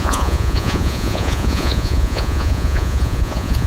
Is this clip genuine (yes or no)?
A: no